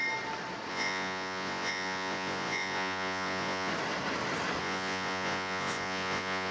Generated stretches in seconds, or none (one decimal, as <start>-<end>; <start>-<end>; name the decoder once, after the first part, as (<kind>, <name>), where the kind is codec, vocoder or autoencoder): 0.7-3.7 (vocoder, Vocos); 4.6-6.5